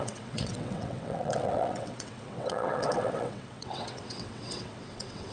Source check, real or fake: fake